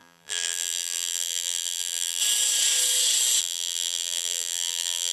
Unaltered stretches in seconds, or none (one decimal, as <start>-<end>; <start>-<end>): 2.2-3.4